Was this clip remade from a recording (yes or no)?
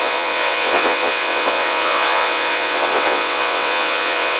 yes